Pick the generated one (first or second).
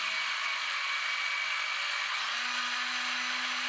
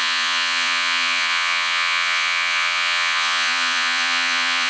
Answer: second